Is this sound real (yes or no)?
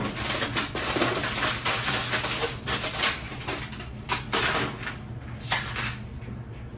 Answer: yes